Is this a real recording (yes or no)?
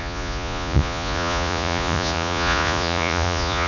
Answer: no